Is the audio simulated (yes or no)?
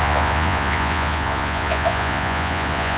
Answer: yes